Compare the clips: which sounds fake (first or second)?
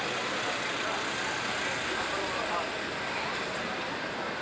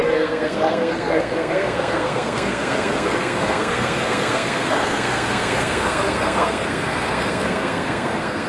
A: second